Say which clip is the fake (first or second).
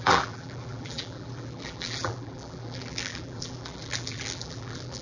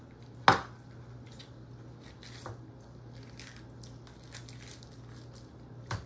first